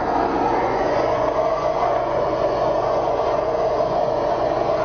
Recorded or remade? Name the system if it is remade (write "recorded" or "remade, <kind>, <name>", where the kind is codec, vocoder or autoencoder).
remade, vocoder, Vocos